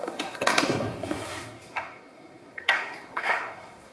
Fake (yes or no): yes